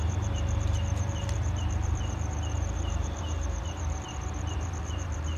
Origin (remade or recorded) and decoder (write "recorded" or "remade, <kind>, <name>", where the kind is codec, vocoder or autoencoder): remade, vocoder, BigVGAN v2